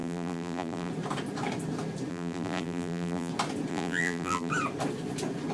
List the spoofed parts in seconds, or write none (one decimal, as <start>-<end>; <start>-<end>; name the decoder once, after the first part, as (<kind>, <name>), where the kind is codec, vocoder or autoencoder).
0.0-0.9 (vocoder, BigVGAN v2); 2.1-3.3; 3.7-4.5